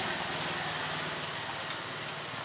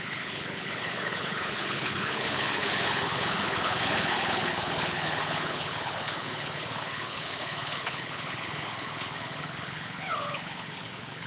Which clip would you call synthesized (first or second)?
second